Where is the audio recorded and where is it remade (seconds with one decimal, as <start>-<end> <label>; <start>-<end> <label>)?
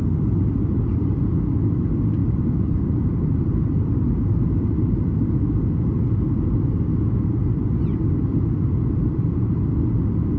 0.0-2.2 recorded; 2.2-5.4 remade; 5.4-10.4 recorded